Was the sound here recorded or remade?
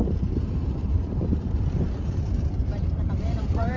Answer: remade